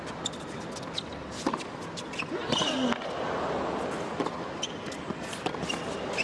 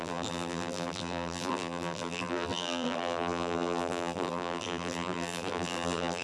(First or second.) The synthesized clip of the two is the second